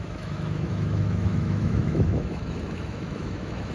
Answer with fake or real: fake